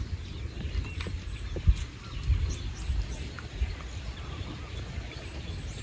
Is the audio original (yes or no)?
yes